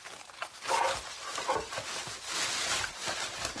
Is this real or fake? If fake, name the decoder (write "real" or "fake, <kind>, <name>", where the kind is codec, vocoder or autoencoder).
real